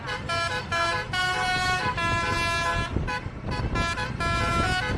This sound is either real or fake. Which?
real